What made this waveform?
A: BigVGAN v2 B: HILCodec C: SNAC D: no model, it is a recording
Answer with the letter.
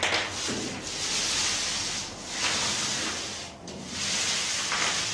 D